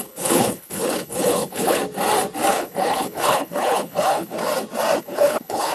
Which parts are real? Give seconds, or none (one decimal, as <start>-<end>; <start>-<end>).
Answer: 1.8-2.5; 4.4-5.0